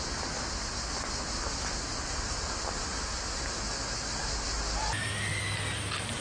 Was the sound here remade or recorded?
recorded